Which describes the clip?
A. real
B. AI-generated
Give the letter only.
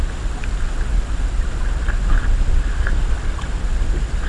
A